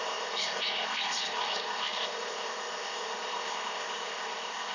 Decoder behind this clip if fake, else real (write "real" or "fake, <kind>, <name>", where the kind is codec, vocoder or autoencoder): fake, codec, ZipCodec